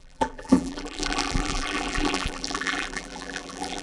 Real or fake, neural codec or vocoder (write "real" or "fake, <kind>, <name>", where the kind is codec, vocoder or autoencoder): fake, vocoder, BigVGAN v2